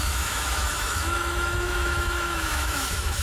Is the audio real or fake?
fake